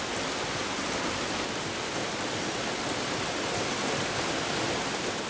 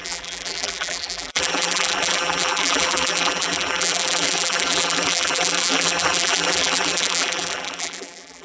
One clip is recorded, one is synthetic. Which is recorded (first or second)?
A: first